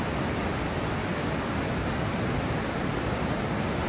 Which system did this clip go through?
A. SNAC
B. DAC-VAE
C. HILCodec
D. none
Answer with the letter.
D